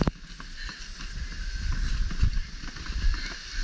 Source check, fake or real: real